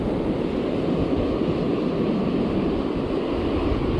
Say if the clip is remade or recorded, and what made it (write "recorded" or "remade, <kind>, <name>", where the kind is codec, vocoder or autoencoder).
recorded